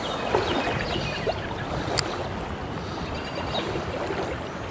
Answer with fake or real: real